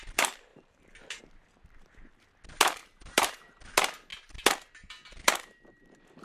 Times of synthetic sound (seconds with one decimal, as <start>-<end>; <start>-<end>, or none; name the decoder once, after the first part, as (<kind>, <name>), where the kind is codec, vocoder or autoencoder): 0.5-1.2 (vocoder, BigVGAN v2); 2.8-3.6